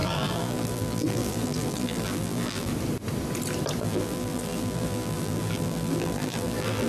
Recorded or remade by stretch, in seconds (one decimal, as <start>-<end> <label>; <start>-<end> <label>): 0.0-2.7 remade; 2.7-3.8 recorded; 3.8-6.9 remade